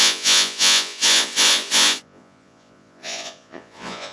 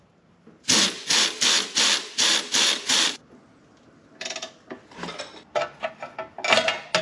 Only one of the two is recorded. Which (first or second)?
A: second